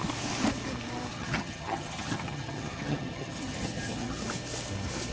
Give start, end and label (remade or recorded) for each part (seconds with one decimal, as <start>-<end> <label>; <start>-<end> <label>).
0.0-1.1 recorded; 1.1-4.2 remade; 4.2-5.1 recorded